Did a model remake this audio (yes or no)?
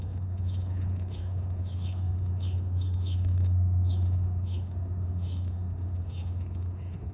yes